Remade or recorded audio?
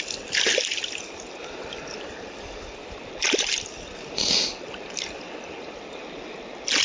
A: recorded